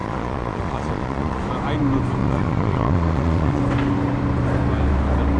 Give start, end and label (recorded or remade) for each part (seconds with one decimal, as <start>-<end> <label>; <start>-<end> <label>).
0.0-1.4 remade; 1.4-2.2 recorded; 2.2-3.6 remade; 3.6-5.4 recorded